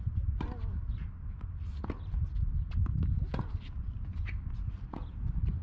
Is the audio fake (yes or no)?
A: no